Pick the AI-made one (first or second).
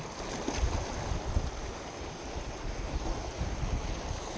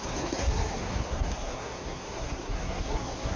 second